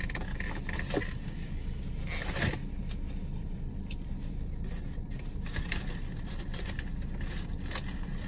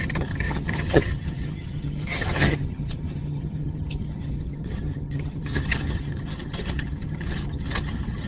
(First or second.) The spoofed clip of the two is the second